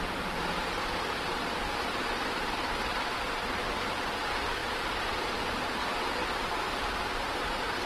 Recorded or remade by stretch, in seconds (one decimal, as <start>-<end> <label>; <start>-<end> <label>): 0.0-7.9 recorded